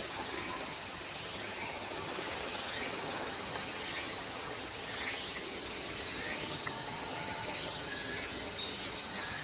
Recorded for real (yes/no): no